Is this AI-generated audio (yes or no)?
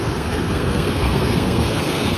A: yes